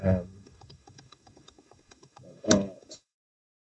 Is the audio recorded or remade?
remade